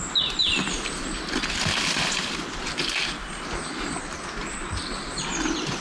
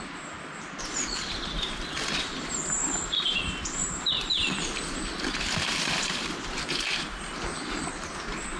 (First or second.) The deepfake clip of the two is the second